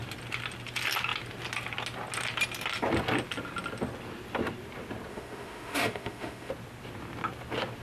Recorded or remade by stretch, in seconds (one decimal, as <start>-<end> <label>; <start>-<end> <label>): 0.0-5.1 recorded; 5.1-6.5 remade; 6.5-7.8 recorded